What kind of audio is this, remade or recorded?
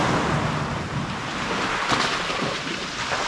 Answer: recorded